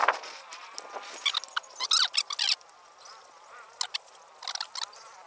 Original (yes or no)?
yes